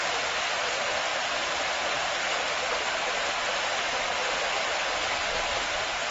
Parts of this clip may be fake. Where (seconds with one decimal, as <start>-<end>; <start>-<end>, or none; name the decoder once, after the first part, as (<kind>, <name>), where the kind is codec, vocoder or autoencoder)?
none